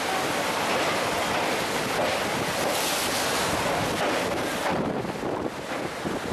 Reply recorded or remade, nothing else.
recorded